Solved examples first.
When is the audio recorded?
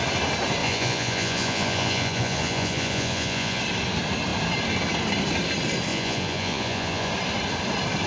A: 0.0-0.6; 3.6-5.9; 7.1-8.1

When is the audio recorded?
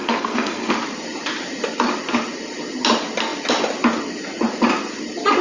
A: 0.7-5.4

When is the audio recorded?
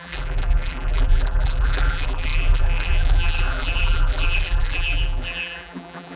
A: none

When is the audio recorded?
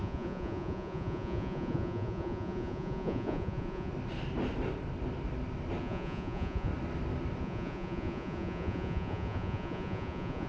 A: 3.9-5.8; 6.7-7.4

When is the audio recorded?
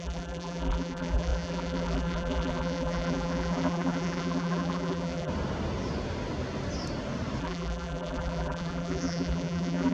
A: 5.3-7.4